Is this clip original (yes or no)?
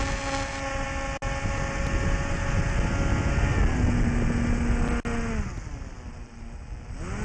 yes